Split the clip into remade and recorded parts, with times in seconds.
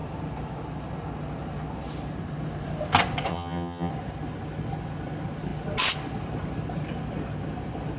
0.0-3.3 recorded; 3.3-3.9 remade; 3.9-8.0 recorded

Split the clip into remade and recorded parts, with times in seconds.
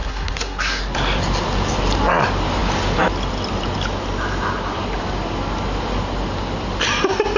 0.0-0.8 remade; 0.8-7.4 recorded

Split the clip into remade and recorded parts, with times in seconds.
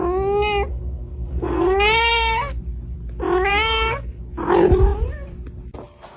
0.0-0.7 recorded; 0.7-2.6 remade; 2.6-3.5 recorded; 3.5-4.2 remade; 4.2-6.2 recorded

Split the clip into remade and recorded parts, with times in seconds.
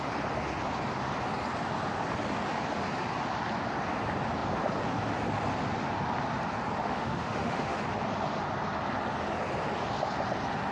0.0-6.8 recorded; 6.8-7.8 remade; 7.8-10.7 recorded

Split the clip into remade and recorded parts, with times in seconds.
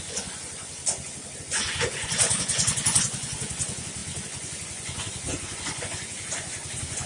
0.0-0.8 remade; 0.8-1.4 recorded; 1.4-7.1 remade